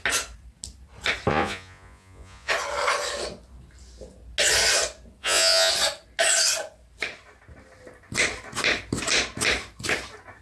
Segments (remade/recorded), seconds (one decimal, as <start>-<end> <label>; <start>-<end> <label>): 0.0-1.3 recorded; 1.3-2.5 remade; 2.5-5.2 recorded; 5.2-5.7 remade; 5.7-10.4 recorded